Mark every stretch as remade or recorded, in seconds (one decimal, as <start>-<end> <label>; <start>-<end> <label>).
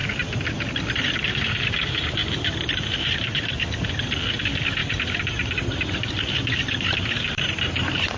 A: 0.0-8.2 recorded